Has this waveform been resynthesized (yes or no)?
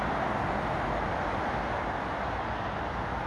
no